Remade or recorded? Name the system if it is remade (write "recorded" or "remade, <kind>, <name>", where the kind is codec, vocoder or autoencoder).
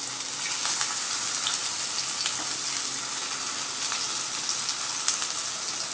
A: recorded